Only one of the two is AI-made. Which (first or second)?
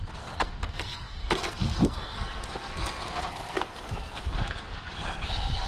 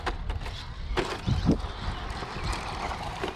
first